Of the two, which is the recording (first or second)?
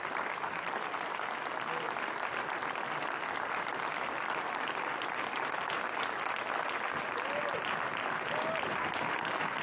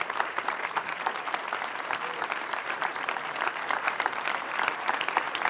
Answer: first